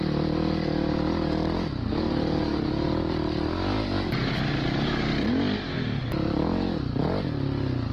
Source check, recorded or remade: recorded